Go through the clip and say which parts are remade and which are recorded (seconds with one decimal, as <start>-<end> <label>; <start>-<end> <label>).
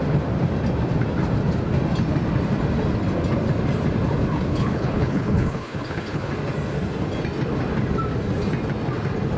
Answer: 0.0-4.5 recorded; 4.5-6.3 remade; 6.3-9.4 recorded